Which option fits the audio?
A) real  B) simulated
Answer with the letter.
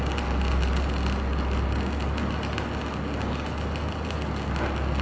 A